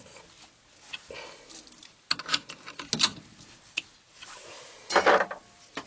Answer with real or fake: real